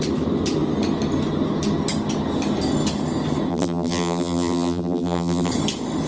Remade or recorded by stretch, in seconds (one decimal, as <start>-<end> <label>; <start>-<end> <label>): 0.0-3.5 recorded; 3.5-5.5 remade; 5.5-6.1 recorded